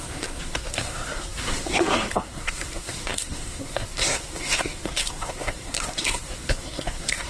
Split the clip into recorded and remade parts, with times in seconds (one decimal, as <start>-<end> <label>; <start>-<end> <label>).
0.0-7.3 remade